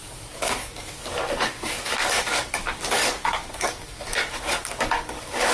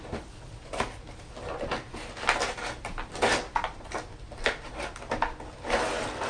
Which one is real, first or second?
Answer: second